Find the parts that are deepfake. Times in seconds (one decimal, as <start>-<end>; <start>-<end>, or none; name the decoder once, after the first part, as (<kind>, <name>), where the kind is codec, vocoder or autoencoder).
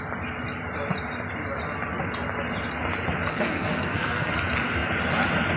3.3-4.3 (codec, SNAC)